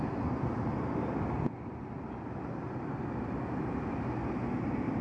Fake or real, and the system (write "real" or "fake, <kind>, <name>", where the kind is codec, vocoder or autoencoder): real